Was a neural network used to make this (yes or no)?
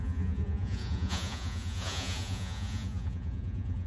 yes